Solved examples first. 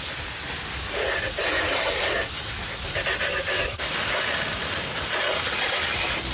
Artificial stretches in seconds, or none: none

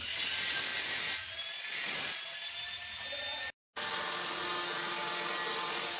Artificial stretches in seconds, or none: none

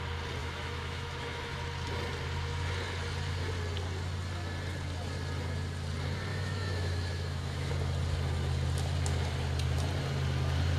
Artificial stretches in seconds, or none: 0.4-1.5 (autoencoder, DAC-VAE); 6.3-7.7